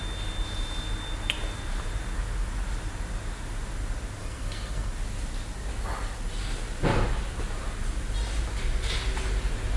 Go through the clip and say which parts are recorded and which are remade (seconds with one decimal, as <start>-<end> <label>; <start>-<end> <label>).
0.0-4.2 recorded; 4.2-4.9 remade; 4.9-9.8 recorded